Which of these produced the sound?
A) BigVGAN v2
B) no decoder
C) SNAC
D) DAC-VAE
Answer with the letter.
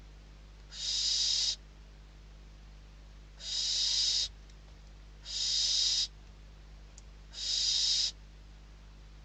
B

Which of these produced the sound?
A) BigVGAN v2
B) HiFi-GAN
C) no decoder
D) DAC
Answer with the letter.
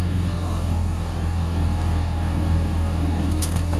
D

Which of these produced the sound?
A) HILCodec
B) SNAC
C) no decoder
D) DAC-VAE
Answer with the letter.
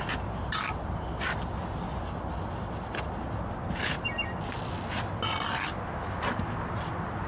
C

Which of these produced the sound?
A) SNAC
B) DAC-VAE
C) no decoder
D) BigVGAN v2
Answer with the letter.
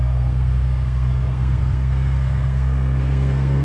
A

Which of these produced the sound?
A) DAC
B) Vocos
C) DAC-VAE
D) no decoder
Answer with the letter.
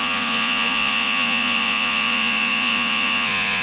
B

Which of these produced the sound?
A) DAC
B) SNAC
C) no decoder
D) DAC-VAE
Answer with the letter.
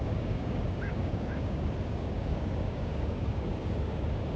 A